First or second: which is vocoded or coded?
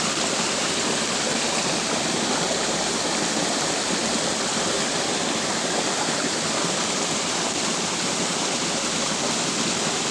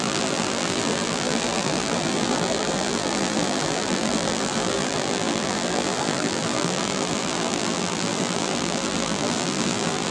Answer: second